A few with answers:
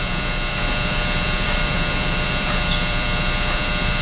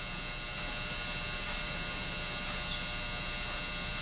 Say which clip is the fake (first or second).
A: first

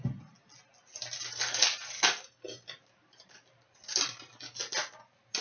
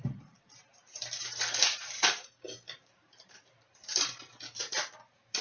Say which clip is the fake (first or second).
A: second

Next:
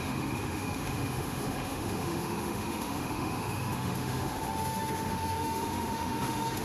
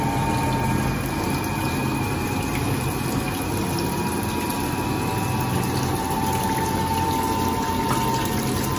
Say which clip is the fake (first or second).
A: first